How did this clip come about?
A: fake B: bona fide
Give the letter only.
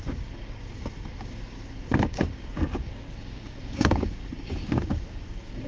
A